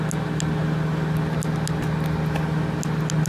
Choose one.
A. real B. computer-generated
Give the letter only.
A